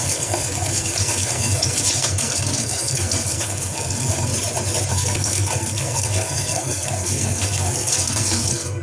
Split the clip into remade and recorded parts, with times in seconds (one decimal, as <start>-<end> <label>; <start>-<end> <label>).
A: 0.0-4.3 remade; 4.3-4.9 recorded; 4.9-8.8 remade